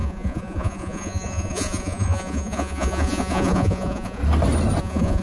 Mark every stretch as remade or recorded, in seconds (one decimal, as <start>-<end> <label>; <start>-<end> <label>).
0.0-4.2 remade; 4.2-4.8 recorded; 4.8-5.2 remade